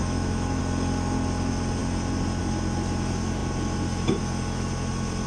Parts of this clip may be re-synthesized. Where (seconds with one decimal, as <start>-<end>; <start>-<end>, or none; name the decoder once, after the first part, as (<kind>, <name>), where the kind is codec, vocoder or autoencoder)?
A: 0.0-0.6 (autoencoder, DAC-VAE)